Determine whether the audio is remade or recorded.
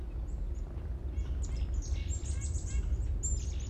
recorded